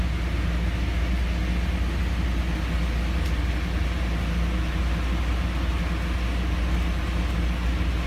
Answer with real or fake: real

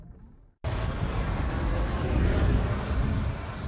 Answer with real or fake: real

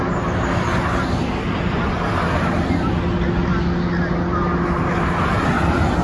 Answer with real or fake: real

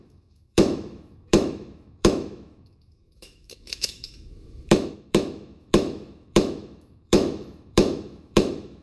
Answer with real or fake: fake